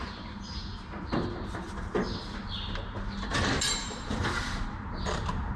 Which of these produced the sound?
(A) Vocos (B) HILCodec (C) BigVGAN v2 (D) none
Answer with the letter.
C